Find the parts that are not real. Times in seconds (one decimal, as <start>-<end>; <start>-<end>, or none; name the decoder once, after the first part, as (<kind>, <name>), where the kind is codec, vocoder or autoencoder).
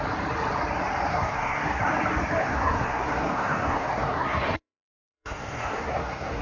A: 1.1-1.8 (codec, SNAC); 2.4-6.4